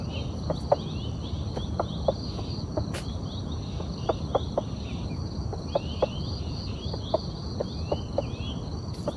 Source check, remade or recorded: recorded